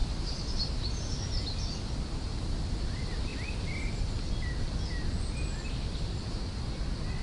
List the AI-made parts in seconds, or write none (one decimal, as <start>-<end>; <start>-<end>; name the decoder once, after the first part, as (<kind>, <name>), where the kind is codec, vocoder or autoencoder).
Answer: none